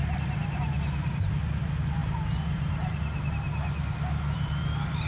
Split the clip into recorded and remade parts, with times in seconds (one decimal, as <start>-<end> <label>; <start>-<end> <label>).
0.0-2.0 recorded; 2.0-3.3 remade; 3.3-5.1 recorded